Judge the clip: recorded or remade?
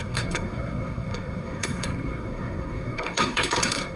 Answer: remade